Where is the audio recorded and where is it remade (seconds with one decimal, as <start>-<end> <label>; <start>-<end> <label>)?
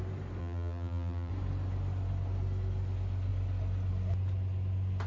0.0-0.4 recorded; 0.4-1.3 remade; 1.3-5.1 recorded